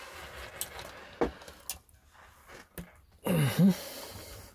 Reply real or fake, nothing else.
real